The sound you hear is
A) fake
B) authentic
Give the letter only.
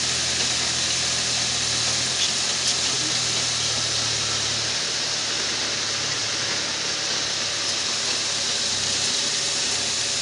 B